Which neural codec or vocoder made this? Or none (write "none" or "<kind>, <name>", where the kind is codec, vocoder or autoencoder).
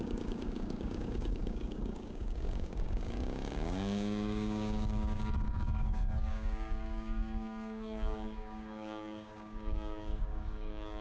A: codec, DAC